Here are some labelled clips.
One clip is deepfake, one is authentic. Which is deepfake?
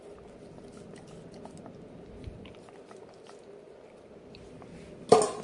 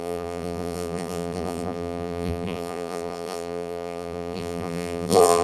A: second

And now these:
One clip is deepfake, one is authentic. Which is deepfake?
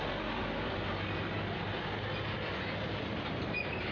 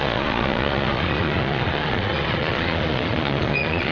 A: second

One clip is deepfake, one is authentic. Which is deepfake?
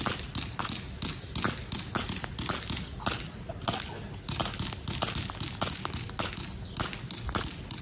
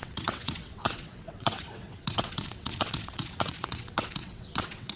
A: second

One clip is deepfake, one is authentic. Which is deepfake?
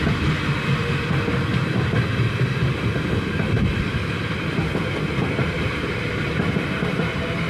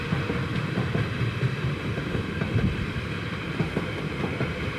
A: second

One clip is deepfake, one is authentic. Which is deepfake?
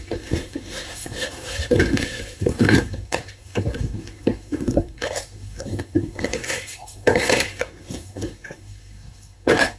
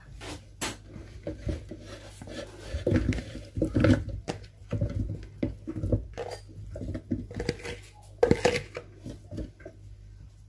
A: first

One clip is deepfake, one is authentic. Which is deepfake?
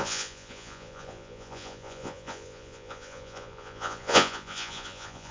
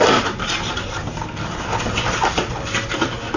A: first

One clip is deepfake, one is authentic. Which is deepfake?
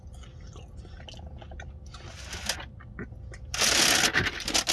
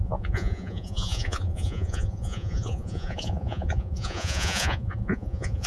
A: second